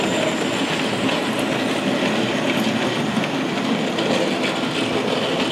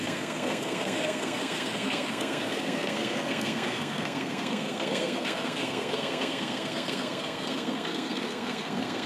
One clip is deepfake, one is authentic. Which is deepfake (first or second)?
second